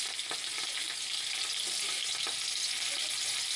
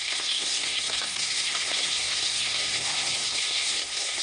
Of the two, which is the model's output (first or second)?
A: second